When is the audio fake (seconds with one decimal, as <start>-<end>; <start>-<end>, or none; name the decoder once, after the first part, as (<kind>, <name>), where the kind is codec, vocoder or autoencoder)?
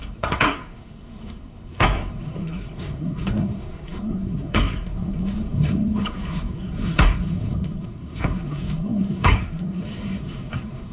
0.0-10.9 (codec, SNAC)